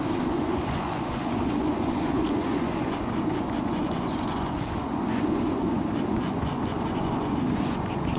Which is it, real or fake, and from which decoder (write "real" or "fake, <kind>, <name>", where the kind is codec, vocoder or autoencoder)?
fake, vocoder, Vocos